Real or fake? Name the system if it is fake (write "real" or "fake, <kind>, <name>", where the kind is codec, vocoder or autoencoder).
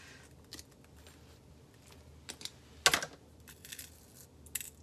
real